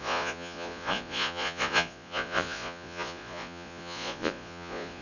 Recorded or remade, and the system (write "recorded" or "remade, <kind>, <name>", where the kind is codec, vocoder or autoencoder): remade, vocoder, Vocos